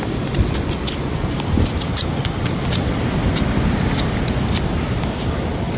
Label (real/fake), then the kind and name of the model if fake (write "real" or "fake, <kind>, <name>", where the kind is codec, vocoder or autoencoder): real